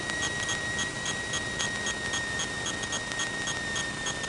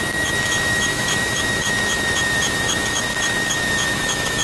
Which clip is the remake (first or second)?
second